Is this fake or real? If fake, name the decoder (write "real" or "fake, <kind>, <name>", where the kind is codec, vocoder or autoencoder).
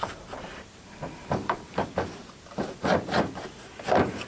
fake, vocoder, BigVGAN v2